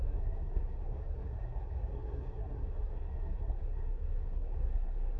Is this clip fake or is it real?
fake